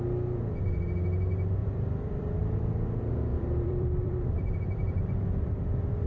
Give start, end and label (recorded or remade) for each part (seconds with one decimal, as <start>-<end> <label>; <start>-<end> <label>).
0.0-1.6 recorded; 1.6-2.3 remade; 2.3-3.3 recorded; 3.3-5.3 remade; 5.3-6.1 recorded

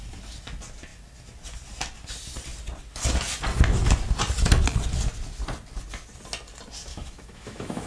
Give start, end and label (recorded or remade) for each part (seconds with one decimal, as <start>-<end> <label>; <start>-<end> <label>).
0.0-6.9 recorded; 6.9-7.9 remade

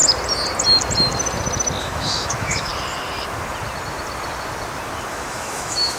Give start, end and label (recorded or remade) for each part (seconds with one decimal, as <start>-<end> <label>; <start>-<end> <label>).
0.0-1.8 recorded; 1.8-2.7 remade; 2.7-5.1 recorded; 5.1-6.0 remade

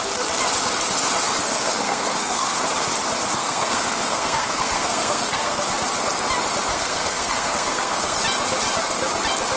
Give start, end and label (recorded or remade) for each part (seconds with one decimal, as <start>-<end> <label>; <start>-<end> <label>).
0.0-1.4 recorded; 1.4-2.6 remade; 2.6-3.4 recorded; 3.4-5.6 remade; 5.6-6.7 recorded; 6.7-8.2 remade; 8.2-9.6 recorded

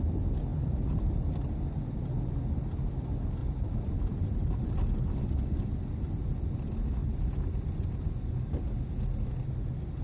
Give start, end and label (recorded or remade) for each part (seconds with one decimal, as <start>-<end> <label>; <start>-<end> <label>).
0.0-3.4 recorded; 3.4-6.5 remade; 6.5-7.0 recorded; 7.0-8.7 remade; 8.7-10.0 recorded

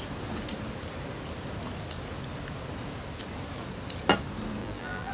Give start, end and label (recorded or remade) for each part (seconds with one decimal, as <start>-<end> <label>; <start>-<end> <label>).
0.0-4.6 recorded; 4.6-5.1 remade

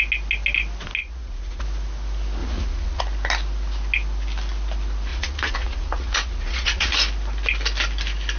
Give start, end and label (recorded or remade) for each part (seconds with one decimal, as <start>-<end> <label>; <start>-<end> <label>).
0.0-1.0 recorded; 1.0-1.6 remade; 1.6-2.4 recorded; 2.4-3.0 remade; 3.0-5.1 recorded; 5.1-6.9 remade; 6.9-8.4 recorded

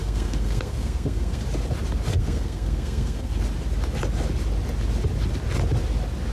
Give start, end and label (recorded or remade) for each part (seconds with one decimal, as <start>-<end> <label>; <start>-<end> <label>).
0.0-1.4 remade; 1.4-2.1 recorded; 2.1-3.4 remade; 3.4-6.3 recorded